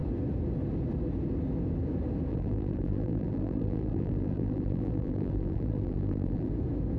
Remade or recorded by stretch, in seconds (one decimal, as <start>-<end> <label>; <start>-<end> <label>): 0.0-2.3 recorded; 2.3-6.5 remade; 6.5-7.0 recorded